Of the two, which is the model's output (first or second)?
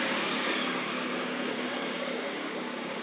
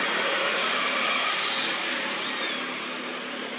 first